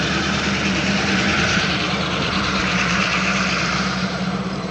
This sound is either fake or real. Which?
fake